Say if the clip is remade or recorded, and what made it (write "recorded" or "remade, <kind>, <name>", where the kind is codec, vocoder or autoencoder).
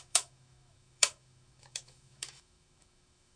remade, autoencoder, DAC-VAE